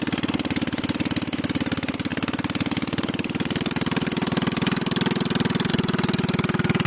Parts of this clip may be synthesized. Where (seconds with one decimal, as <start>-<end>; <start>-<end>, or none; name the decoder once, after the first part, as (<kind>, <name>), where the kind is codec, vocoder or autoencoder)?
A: none